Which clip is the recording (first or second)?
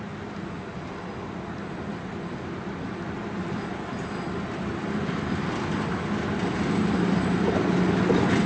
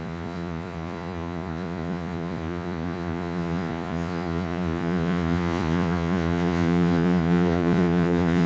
first